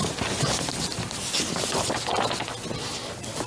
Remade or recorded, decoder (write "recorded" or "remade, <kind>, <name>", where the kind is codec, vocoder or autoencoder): recorded